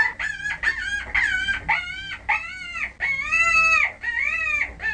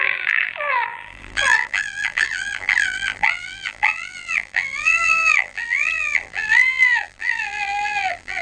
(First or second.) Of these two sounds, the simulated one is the second